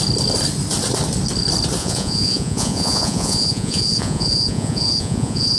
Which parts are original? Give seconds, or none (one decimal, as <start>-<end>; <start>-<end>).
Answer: 0.0-1.8